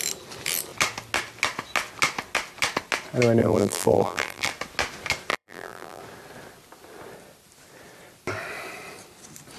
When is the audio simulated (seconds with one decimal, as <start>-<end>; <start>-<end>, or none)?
3.4-4.5; 5.3-6.0